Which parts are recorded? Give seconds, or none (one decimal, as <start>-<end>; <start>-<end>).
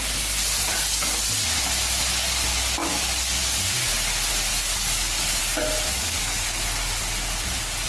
0.0-2.8; 3.4-4.5; 5.4-5.9; 6.6-7.9